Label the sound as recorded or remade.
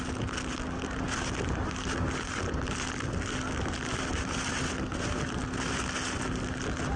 recorded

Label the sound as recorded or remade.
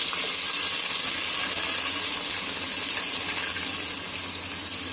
recorded